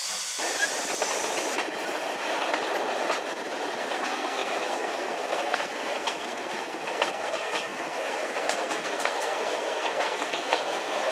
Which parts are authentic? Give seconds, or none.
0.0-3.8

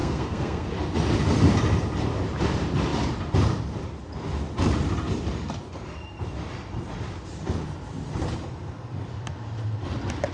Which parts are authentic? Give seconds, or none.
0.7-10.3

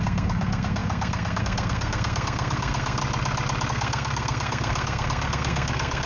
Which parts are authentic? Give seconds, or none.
3.0-3.7

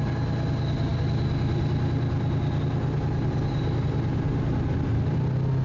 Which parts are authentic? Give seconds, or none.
0.0-5.6